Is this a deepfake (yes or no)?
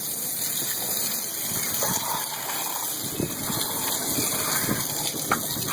no